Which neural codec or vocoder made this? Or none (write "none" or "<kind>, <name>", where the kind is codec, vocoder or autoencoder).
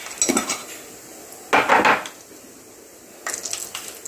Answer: none